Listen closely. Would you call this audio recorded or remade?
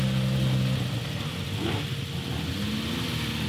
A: recorded